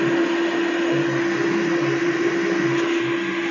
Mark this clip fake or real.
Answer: real